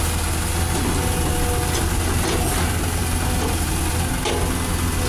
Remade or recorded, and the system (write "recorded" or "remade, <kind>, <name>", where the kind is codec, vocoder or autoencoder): recorded